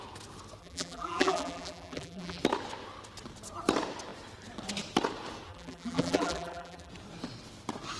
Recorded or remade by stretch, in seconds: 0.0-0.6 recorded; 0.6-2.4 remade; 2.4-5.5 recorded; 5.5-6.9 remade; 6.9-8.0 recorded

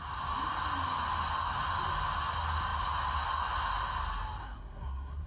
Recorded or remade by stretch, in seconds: 0.0-4.4 recorded; 4.4-5.3 remade

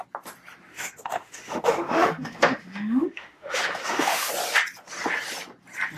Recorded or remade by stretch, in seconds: 0.0-0.7 recorded; 0.7-4.3 remade; 4.3-6.0 recorded

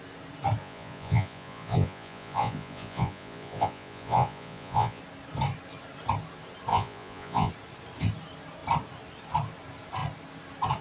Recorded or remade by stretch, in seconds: 0.0-0.6 recorded; 0.6-5.0 remade; 5.0-6.7 recorded; 6.7-7.5 remade; 7.5-10.8 recorded

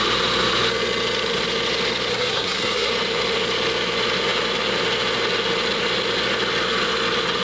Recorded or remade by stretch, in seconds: 0.0-2.1 recorded; 2.1-2.9 remade; 2.9-7.4 recorded

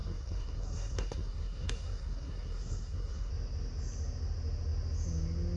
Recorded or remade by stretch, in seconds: 0.0-3.3 remade; 3.3-5.6 recorded

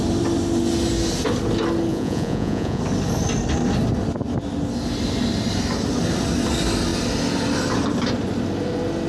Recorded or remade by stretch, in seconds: 0.0-1.9 recorded; 1.9-2.8 remade; 2.8-9.1 recorded